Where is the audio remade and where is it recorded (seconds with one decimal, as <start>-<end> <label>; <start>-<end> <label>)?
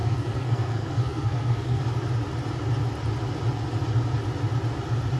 0.0-1.8 remade; 1.8-5.2 recorded